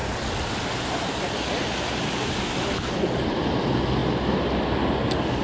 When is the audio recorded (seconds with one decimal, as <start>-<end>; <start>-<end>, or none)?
0.0-5.4